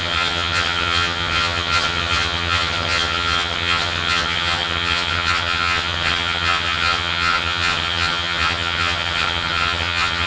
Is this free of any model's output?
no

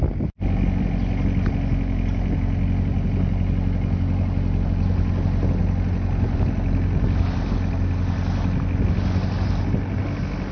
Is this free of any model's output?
yes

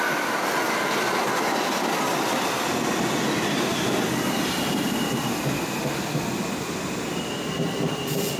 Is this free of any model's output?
yes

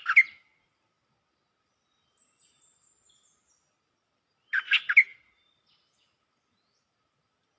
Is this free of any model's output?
yes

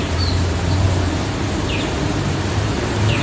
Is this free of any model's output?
no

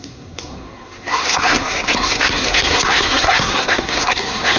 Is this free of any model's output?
no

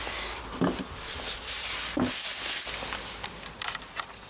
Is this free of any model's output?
yes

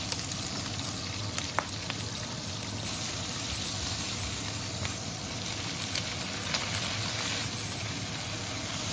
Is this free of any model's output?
yes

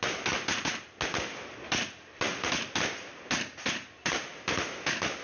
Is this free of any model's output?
yes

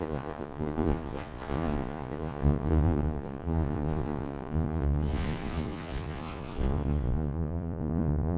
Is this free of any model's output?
no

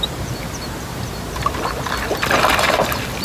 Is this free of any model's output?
yes